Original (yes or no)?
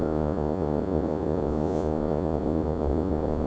no